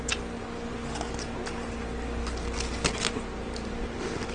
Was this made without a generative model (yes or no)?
yes